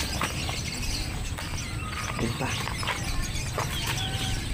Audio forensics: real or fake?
real